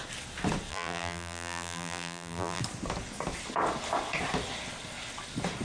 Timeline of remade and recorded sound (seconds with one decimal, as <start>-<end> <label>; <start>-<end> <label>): 0.0-0.7 recorded; 0.7-2.6 remade; 2.6-5.6 recorded